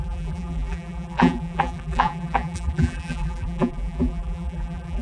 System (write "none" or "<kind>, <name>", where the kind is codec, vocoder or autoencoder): vocoder, BigVGAN v2